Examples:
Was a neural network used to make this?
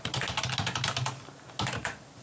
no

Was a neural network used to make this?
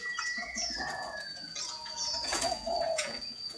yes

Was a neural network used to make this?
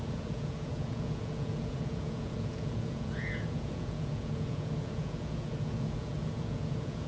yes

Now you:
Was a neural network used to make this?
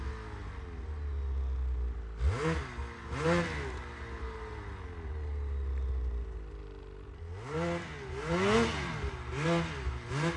no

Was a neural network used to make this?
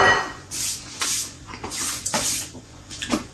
yes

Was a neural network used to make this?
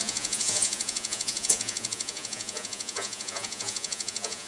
yes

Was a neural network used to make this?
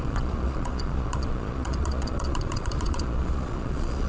yes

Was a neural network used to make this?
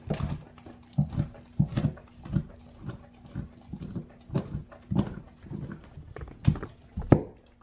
no